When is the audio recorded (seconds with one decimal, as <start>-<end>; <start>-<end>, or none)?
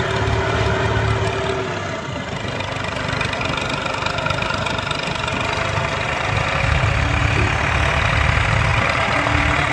0.0-9.7